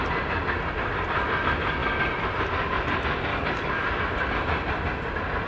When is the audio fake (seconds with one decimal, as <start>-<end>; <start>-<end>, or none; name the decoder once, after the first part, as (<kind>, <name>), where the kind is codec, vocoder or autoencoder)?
3.3-4.0 (codec, DAC)